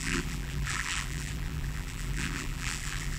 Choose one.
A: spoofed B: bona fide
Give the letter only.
A